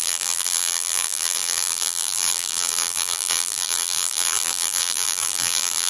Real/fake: fake